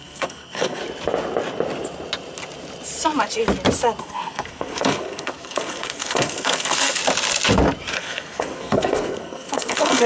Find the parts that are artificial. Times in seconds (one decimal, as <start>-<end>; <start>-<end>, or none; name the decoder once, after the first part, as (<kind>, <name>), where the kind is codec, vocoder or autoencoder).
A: 0.0-0.8 (codec, SNAC); 4.0-7.0; 7.9-10.1